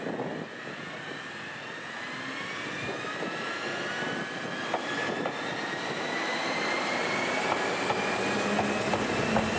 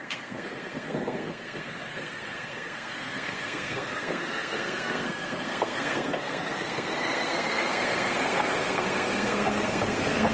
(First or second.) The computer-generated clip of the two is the second